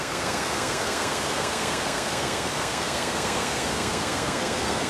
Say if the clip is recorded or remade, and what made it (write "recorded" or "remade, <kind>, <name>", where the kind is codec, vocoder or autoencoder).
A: remade, codec, SNAC